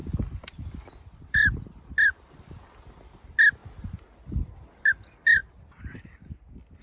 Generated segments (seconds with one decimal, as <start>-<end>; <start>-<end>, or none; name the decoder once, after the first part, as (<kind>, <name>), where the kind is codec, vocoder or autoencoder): 0.0-3.6 (vocoder, BigVGAN v2); 4.9-5.4